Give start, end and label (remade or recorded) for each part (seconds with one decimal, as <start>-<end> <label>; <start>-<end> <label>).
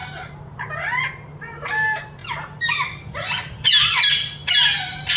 0.0-5.2 recorded